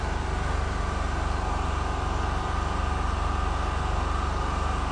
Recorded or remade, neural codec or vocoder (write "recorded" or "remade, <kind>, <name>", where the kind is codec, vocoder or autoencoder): recorded